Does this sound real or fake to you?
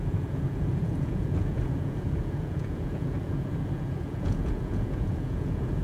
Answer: fake